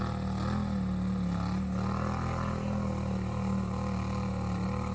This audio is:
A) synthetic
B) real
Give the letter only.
B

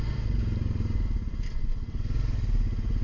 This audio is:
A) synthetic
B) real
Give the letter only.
B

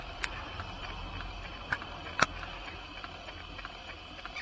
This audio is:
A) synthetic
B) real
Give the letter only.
B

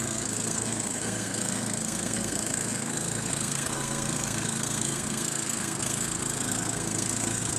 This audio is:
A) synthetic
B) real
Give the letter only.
A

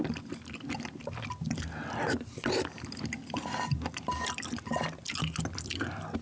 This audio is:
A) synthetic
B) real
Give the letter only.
B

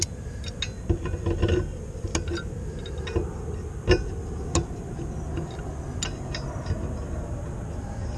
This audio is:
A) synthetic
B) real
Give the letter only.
B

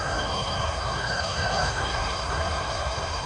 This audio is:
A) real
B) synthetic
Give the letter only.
B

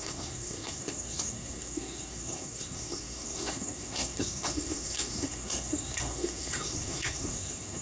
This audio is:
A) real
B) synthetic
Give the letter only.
B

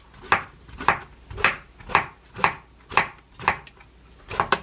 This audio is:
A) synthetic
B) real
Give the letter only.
B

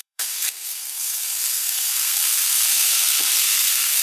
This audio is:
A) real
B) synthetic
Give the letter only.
B